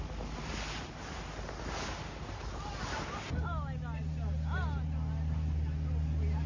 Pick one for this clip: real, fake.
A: real